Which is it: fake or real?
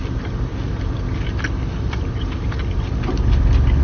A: real